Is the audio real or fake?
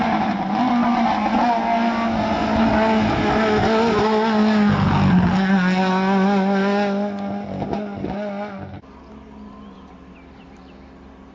real